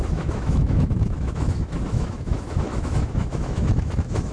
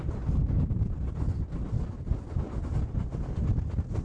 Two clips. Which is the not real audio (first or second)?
first